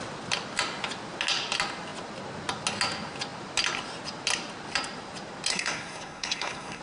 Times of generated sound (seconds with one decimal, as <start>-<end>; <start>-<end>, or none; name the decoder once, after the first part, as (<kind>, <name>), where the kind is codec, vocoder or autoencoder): 5.5-6.8 (codec, SNAC)